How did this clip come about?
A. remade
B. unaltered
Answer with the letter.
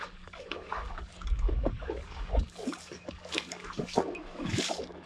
A